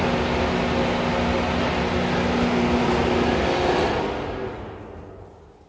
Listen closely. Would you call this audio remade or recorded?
recorded